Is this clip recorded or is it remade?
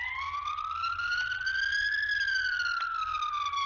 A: recorded